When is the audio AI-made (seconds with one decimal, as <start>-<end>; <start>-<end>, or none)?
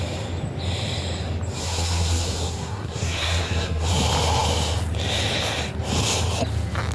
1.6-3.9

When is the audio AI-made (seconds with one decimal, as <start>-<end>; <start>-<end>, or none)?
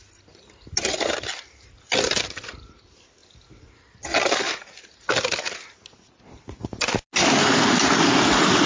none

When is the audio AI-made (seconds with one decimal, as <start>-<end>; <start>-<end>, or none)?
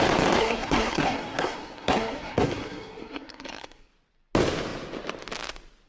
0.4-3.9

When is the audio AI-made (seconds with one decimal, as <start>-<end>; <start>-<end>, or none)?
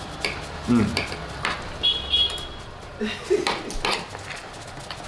none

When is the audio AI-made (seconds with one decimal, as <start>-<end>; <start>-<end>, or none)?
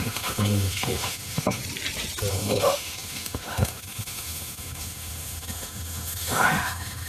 0.0-1.6; 2.3-7.1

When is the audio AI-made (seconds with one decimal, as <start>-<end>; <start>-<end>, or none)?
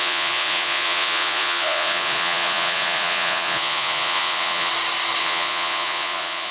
0.0-4.7; 5.2-6.5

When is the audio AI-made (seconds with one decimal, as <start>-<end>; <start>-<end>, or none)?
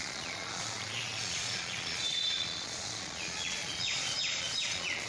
0.0-5.1